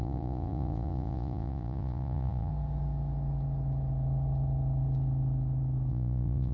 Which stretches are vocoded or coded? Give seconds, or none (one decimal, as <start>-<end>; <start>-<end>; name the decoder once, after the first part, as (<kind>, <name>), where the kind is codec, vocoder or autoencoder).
0.0-2.5 (vocoder, Vocos); 5.9-6.5